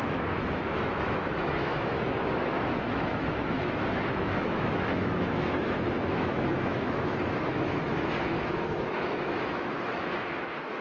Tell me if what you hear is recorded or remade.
remade